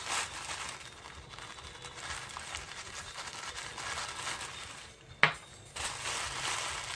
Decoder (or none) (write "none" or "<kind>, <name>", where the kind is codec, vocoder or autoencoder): none